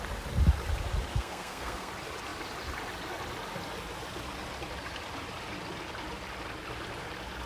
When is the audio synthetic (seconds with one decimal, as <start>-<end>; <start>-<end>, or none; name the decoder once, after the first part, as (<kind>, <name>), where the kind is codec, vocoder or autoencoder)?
1.1-1.9 (codec, SNAC)